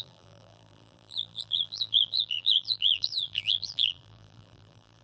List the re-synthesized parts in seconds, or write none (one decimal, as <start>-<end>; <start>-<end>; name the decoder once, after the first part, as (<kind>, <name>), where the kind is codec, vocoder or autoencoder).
0.0-5.0 (vocoder, BigVGAN v2)